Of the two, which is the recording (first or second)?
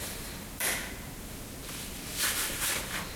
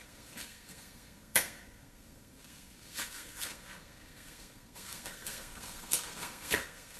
first